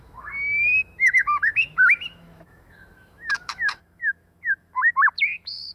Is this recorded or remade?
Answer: remade